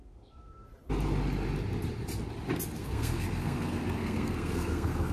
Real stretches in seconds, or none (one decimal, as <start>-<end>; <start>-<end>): 0.7-2.8